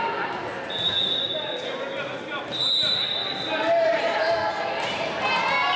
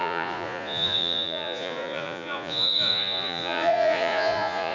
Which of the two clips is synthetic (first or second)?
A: second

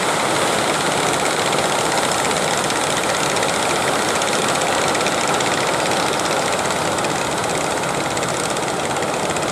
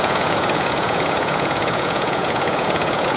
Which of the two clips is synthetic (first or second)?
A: second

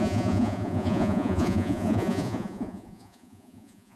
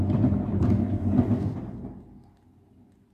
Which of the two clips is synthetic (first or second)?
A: first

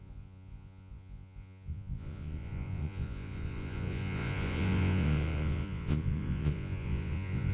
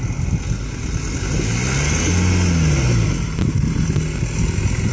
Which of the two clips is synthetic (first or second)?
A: first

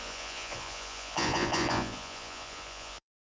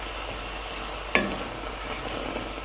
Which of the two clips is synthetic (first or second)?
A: first